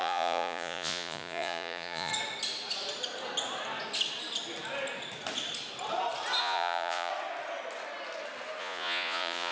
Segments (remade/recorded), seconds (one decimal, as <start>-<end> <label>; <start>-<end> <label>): 0.0-2.1 remade; 2.1-6.4 recorded; 6.4-7.1 remade; 7.1-8.6 recorded; 8.6-9.5 remade